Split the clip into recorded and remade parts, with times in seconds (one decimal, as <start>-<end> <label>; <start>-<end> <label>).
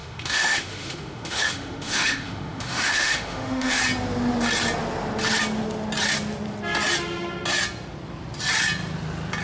0.0-3.8 remade; 3.8-9.4 recorded